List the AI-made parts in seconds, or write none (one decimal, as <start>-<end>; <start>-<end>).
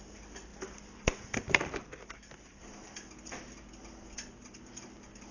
none